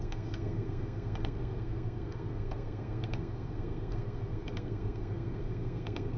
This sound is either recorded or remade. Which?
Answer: remade